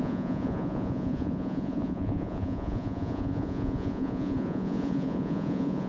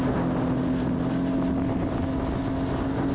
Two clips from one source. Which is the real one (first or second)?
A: second